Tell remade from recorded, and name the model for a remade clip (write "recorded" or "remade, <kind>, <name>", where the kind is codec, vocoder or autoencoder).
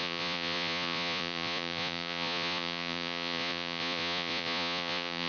remade, vocoder, Vocos